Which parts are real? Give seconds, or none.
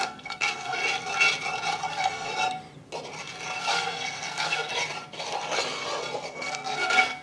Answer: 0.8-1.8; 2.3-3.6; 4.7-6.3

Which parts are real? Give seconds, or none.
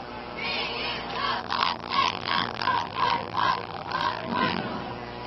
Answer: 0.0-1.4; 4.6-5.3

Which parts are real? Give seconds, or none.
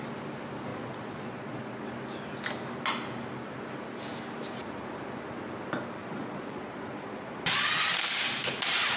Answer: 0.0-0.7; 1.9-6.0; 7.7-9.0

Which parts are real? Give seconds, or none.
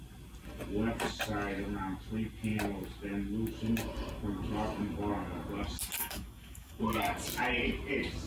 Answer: 0.0-6.0; 6.8-8.3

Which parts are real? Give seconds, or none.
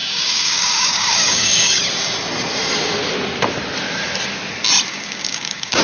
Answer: 1.8-4.9